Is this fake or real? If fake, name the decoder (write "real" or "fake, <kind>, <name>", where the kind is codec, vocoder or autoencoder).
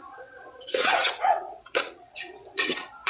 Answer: fake, vocoder, WaveNeXt